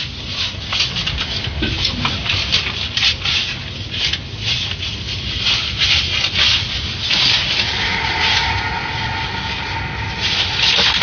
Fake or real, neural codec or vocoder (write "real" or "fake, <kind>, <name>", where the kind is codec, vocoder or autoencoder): real